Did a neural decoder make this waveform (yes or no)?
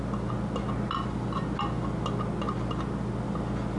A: no